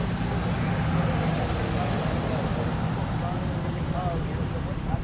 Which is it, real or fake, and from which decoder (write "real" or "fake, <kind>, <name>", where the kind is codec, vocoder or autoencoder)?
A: real